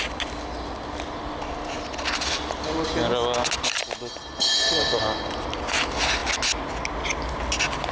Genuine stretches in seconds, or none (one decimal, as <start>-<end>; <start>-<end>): 0.0-7.9